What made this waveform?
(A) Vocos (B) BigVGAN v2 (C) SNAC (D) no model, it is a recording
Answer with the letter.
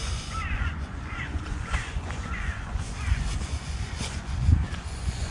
A